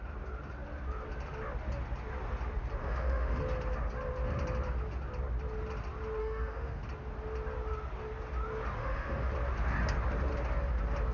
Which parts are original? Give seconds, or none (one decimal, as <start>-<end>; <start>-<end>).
0.0-2.8; 3.4-6.2; 6.8-8.8; 9.3-11.1